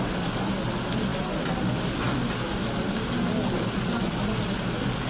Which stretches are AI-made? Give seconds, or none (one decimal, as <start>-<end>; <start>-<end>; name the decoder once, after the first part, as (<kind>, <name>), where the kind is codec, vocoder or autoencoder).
none